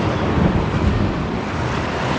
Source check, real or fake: real